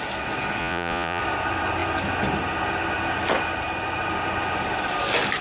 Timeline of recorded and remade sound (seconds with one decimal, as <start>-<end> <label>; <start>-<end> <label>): 0.0-0.6 recorded; 0.6-1.2 remade; 1.2-5.4 recorded